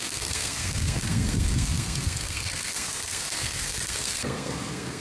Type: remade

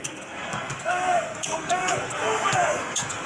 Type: remade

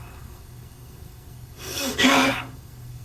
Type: remade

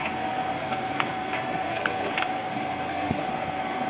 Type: remade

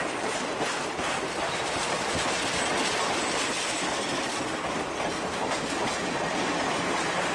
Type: recorded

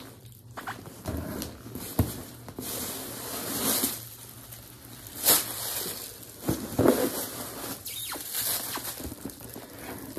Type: recorded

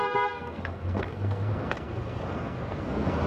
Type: remade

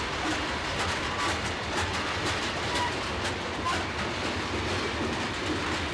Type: recorded